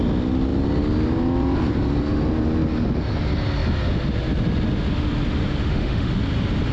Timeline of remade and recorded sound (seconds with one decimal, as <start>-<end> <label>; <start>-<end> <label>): 0.0-5.6 recorded; 5.6-6.2 remade; 6.2-6.7 recorded